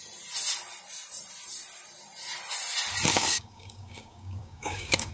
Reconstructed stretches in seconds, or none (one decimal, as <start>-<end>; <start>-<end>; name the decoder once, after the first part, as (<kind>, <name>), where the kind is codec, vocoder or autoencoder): 3.1-5.1 (codec, DAC)